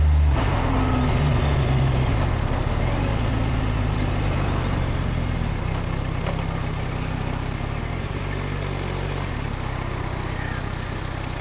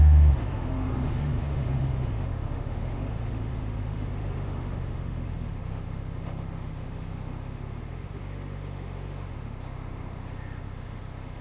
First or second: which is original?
first